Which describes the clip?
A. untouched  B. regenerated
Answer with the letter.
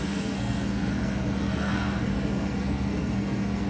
B